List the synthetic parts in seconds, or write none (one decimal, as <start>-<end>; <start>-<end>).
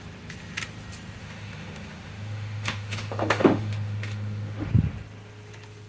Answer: 1.2-4.7